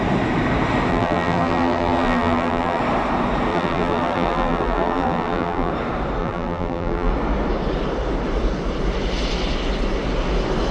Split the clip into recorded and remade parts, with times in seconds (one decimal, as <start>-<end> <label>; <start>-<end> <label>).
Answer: 0.0-0.9 recorded; 0.9-2.8 remade; 2.8-3.5 recorded; 3.5-5.7 remade; 5.7-6.2 recorded; 6.2-7.1 remade; 7.1-10.7 recorded